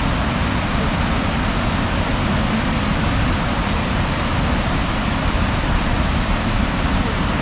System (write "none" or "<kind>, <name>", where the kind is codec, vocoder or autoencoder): none